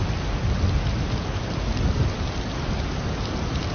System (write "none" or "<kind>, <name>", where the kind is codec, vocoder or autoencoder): none